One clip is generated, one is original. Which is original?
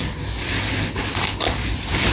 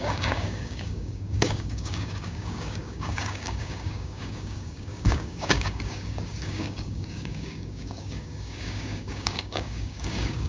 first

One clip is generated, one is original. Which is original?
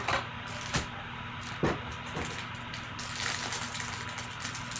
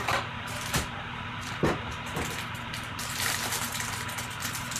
first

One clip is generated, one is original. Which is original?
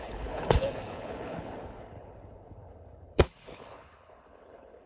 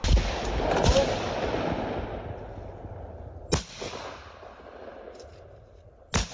second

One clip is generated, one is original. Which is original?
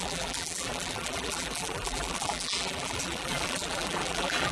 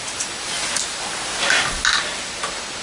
second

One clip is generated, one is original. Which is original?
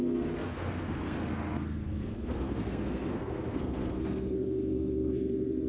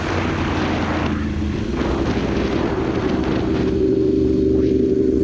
second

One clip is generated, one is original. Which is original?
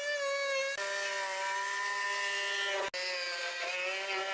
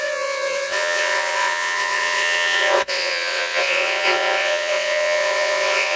first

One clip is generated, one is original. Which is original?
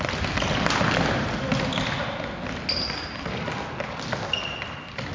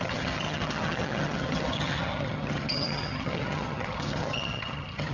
first